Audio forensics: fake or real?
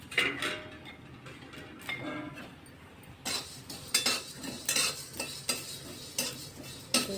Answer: real